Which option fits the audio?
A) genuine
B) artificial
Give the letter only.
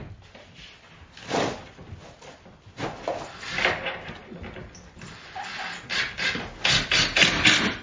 A